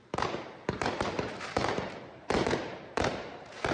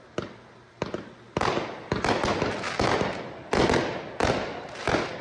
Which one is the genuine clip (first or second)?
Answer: second